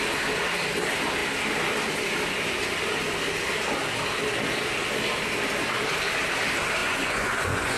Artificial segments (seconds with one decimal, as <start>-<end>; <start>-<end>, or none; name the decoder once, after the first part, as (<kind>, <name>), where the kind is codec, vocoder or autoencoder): 6.8-7.8 (vocoder, Vocos)